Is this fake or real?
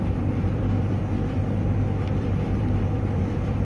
fake